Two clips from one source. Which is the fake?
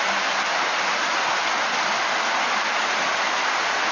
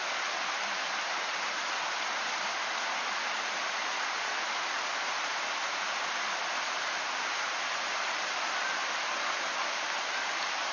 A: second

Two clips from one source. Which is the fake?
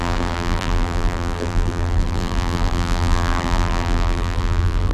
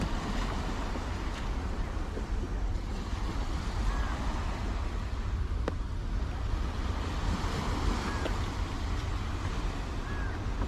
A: first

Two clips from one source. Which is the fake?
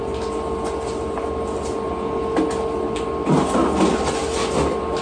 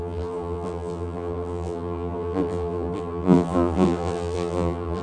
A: second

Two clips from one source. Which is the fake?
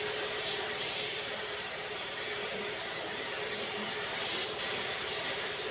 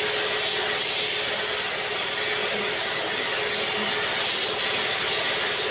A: first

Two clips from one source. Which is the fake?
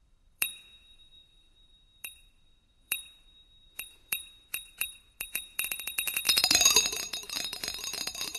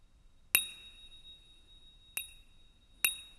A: first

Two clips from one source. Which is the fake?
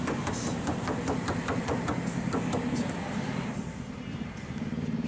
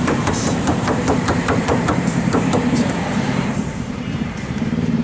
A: second